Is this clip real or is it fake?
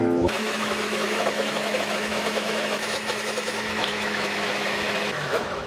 fake